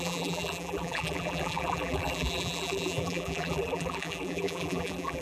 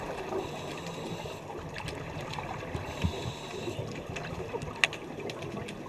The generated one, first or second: first